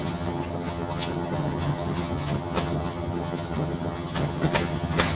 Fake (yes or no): yes